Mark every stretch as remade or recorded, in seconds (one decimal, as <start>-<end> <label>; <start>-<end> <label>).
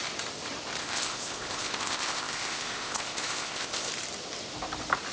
0.0-0.8 recorded; 0.8-3.9 remade; 3.9-5.1 recorded